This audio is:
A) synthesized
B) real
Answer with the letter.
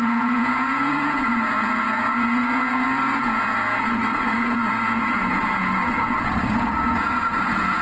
A